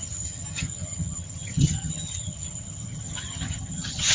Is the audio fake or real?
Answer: fake